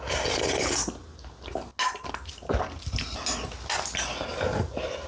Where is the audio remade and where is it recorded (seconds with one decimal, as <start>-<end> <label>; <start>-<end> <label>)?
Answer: 0.0-5.1 recorded